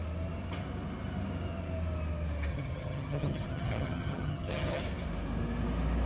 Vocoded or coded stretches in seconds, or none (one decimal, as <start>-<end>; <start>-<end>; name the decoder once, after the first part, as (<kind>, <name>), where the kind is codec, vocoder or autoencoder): 2.5-4.8 (vocoder, HiFi-GAN)